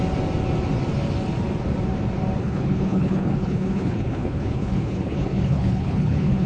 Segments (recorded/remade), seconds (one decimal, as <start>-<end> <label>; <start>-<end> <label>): 0.0-2.4 recorded; 2.4-6.5 remade